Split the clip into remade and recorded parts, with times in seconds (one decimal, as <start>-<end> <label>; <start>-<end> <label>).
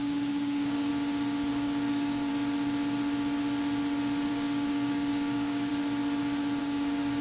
0.0-0.9 remade; 0.9-1.5 recorded; 1.5-2.3 remade; 2.3-4.3 recorded; 4.3-5.7 remade; 5.7-6.6 recorded; 6.6-7.2 remade